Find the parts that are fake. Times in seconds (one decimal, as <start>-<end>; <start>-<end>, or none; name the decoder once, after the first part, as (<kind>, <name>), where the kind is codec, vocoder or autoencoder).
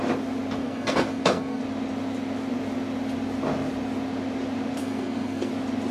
0.6-1.6 (codec, SNAC); 4.8-5.5